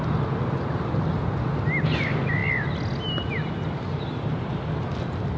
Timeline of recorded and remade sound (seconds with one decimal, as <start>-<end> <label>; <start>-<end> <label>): 0.0-5.4 recorded